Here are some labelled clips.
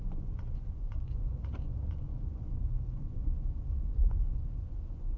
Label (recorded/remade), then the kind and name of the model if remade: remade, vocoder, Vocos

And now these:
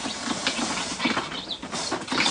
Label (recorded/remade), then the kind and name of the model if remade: recorded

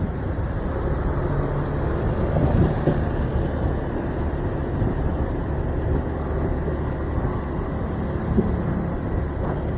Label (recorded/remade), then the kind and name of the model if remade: recorded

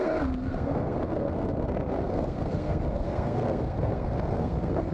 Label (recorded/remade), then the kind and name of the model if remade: remade, codec, SNAC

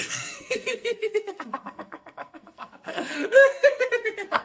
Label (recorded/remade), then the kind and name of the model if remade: remade, codec, SNAC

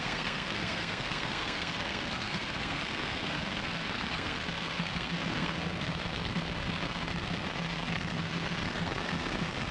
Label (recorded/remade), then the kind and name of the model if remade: remade, codec, SNAC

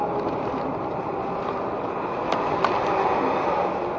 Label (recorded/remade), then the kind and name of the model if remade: recorded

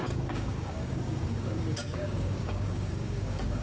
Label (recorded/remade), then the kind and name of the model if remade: remade, codec, DAC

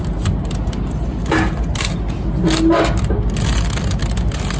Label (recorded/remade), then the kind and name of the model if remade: recorded